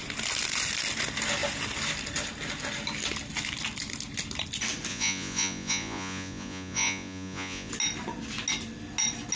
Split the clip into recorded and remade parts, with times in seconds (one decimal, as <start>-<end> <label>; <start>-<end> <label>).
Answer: 0.0-4.9 recorded; 4.9-7.7 remade; 7.7-9.4 recorded